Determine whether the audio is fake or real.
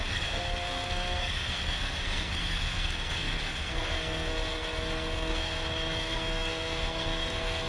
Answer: fake